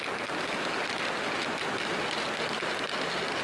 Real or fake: real